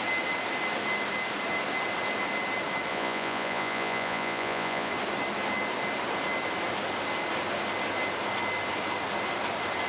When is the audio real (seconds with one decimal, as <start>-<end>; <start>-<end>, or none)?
0.0-2.9; 4.9-9.9